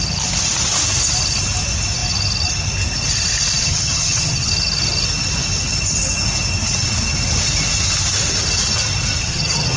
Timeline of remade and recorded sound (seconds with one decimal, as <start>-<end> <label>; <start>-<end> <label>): 0.0-3.6 recorded; 3.6-4.5 remade; 4.5-9.2 recorded; 9.2-9.8 remade